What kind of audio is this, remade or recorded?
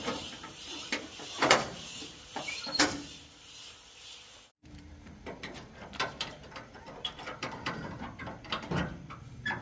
remade